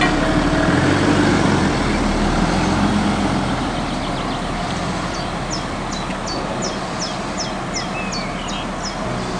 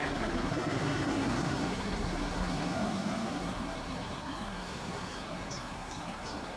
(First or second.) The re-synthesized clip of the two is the second